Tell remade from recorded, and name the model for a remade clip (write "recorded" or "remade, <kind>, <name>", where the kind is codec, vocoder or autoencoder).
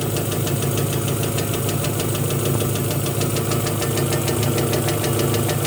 recorded